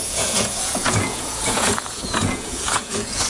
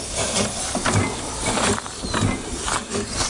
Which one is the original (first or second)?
second